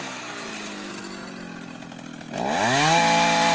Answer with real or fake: real